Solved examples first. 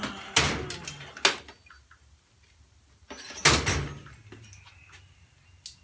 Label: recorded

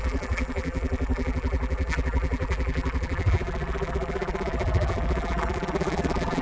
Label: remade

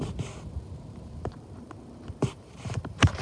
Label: remade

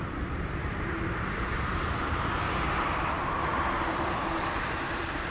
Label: remade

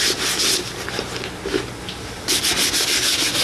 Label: recorded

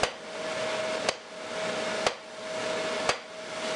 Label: recorded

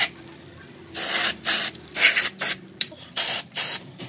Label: remade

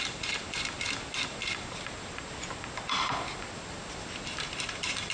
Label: recorded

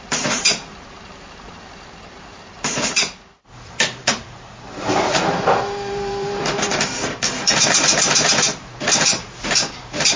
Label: remade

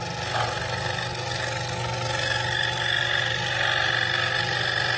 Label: recorded